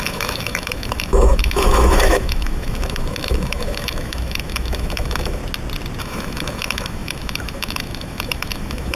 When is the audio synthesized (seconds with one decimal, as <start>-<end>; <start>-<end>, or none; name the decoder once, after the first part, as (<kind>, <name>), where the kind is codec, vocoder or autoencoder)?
0.0-5.4 (autoencoder, DAC-VAE); 6.0-9.0